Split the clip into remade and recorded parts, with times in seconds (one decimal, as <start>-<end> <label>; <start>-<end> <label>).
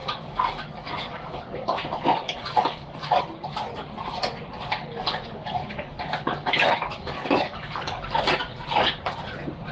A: 0.0-3.2 remade; 3.2-4.8 recorded; 4.8-8.2 remade; 8.2-9.7 recorded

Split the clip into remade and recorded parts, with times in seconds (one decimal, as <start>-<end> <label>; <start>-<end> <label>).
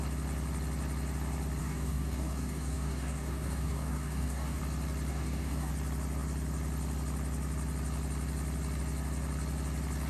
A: 0.0-1.6 recorded; 1.6-4.6 remade; 4.6-5.1 recorded; 5.1-5.7 remade; 5.7-10.1 recorded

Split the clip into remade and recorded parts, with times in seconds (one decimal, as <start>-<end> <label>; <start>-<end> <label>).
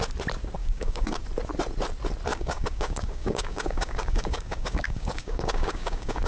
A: 0.0-0.6 recorded; 0.6-1.2 remade; 1.2-2.3 recorded; 2.3-6.3 remade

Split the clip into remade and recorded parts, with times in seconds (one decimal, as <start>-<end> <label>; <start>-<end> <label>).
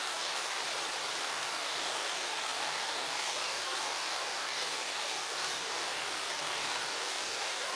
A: 0.0-0.6 remade; 0.6-1.2 recorded; 1.2-7.8 remade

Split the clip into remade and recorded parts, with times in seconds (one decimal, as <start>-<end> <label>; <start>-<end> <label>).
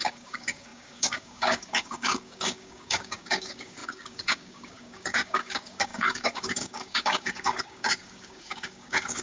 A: 0.0-9.2 remade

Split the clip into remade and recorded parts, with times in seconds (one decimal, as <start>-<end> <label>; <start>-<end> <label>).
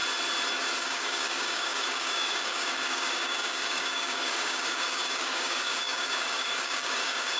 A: 0.0-0.8 recorded; 0.8-7.4 remade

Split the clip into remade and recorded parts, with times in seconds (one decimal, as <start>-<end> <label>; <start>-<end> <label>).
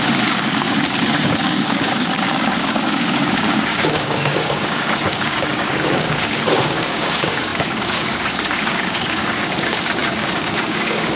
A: 0.0-11.2 remade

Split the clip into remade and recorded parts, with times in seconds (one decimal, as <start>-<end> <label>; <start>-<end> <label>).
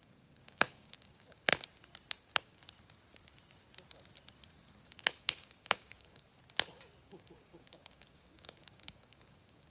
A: 0.0-1.5 remade; 1.5-2.2 recorded; 2.2-2.6 remade; 2.6-4.8 recorded; 4.8-6.3 remade; 6.3-7.0 recorded; 7.0-9.7 remade